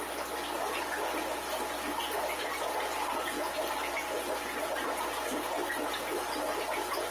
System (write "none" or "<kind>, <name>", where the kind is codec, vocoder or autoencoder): none